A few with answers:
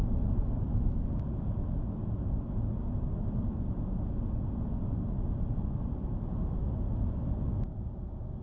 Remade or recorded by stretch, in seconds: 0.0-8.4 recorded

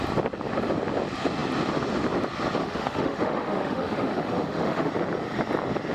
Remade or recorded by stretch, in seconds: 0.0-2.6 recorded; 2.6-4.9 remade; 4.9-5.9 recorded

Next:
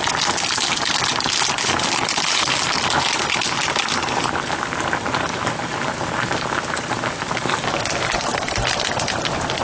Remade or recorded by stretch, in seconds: 0.0-8.3 recorded; 8.3-9.2 remade; 9.2-9.6 recorded

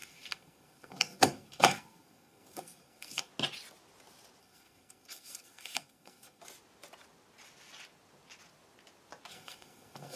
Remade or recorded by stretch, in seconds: 0.0-3.3 remade; 3.3-4.4 recorded; 4.4-6.4 remade; 6.4-9.3 recorded; 9.3-10.2 remade

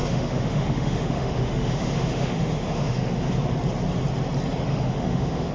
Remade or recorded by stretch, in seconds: 0.0-3.3 remade; 3.3-4.7 recorded; 4.7-5.5 remade

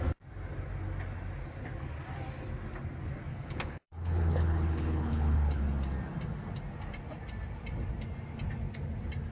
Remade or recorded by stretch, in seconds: 0.0-3.3 recorded; 3.3-5.6 remade; 5.6-9.3 recorded

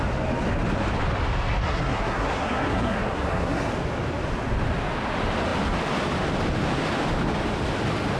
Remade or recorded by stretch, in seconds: 0.0-1.6 recorded; 1.6-3.7 remade; 3.7-8.2 recorded

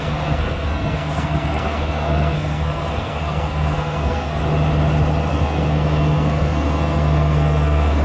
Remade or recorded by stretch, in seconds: 0.0-4.4 remade; 4.4-5.3 recorded; 5.3-8.0 remade